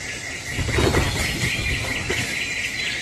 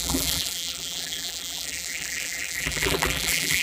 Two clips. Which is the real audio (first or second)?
first